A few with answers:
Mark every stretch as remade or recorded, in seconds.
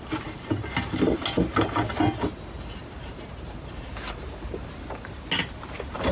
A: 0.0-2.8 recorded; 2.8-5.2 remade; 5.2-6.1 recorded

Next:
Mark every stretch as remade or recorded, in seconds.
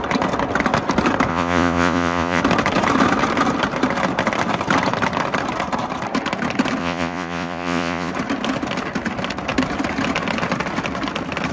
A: 0.0-1.3 recorded; 1.3-2.4 remade; 2.4-6.8 recorded; 6.8-8.1 remade; 8.1-11.5 recorded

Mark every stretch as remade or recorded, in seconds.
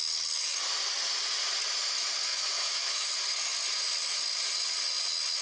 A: 0.0-2.3 recorded; 2.3-3.1 remade; 3.1-5.4 recorded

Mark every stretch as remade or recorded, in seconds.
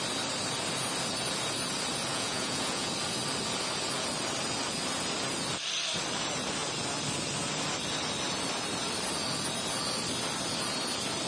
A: 0.0-2.1 recorded; 2.1-2.9 remade; 2.9-11.3 recorded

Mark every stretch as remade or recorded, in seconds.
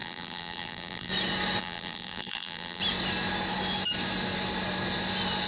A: 0.0-1.1 remade; 1.1-1.6 recorded; 1.6-2.8 remade; 2.8-5.5 recorded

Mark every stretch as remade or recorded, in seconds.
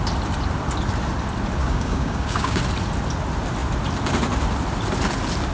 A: 0.0-1.6 recorded; 1.6-2.6 remade; 2.6-5.5 recorded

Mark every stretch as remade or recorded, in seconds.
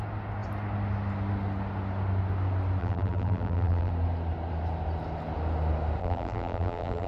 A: 0.0-2.8 recorded; 2.8-3.9 remade; 3.9-6.0 recorded; 6.0-7.1 remade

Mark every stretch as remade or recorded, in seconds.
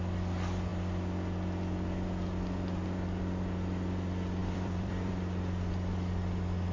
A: 0.0-4.4 recorded; 4.4-5.1 remade; 5.1-6.7 recorded